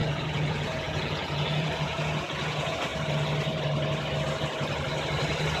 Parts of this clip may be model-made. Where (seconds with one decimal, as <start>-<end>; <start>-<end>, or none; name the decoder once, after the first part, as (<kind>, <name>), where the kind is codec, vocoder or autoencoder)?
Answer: 0.0-2.9 (vocoder, Vocos)